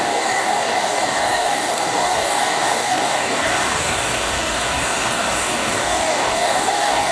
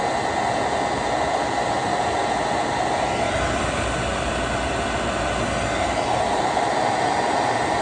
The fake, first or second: first